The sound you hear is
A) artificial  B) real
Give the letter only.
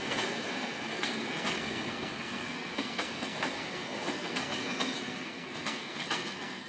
A